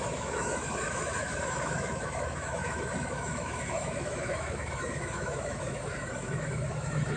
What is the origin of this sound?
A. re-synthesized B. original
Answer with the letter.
A